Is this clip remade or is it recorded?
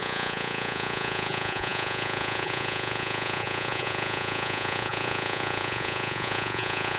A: remade